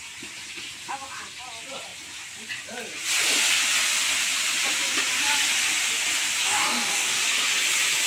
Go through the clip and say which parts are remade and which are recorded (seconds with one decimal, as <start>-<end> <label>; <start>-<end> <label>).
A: 0.0-6.4 recorded; 6.4-7.2 remade; 7.2-8.1 recorded